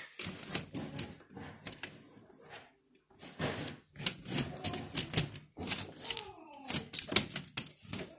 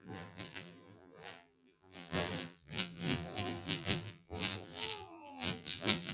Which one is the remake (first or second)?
second